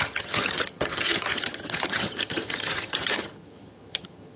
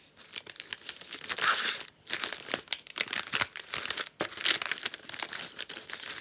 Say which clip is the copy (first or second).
first